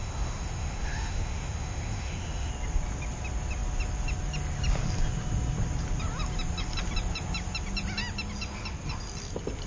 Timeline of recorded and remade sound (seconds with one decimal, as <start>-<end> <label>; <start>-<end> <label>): 0.0-2.5 remade; 2.5-9.7 recorded